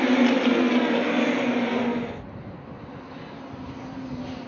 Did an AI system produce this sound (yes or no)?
no